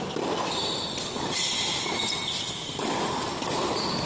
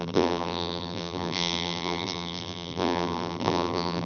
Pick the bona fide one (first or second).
first